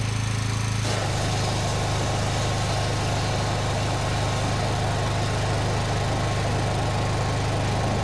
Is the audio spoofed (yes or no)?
no